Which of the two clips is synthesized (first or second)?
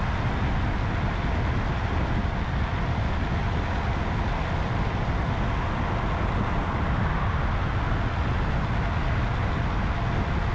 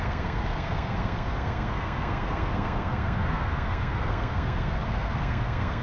second